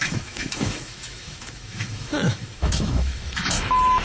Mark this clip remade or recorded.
remade